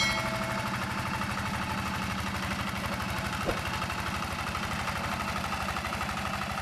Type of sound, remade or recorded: recorded